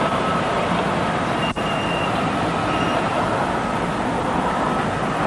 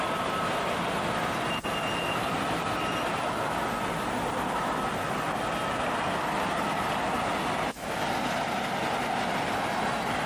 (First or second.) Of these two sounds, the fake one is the first